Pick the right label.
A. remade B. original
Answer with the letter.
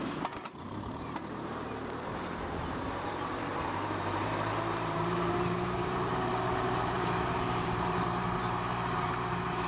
A